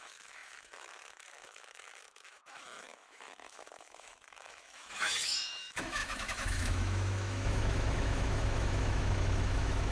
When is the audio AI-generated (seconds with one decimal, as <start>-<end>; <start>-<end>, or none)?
0.0-9.9